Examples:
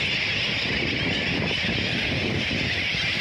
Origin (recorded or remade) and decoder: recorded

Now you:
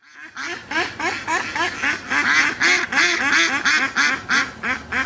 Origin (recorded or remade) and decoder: recorded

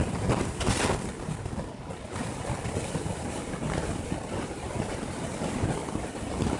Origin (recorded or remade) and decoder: recorded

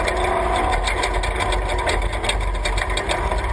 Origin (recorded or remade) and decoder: recorded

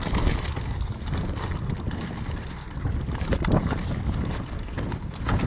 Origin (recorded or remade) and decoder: recorded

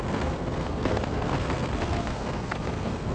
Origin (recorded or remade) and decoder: remade, codec, SNAC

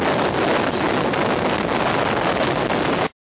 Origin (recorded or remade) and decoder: recorded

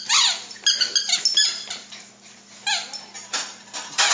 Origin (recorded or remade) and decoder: recorded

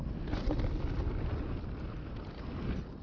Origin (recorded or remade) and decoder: recorded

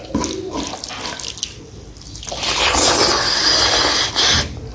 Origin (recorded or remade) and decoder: recorded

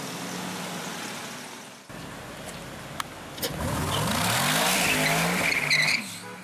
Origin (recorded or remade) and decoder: recorded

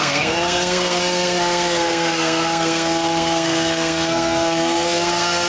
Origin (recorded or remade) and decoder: remade, codec, SNAC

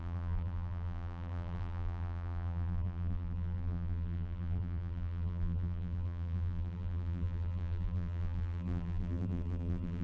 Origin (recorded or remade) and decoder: remade, vocoder, BigVGAN v2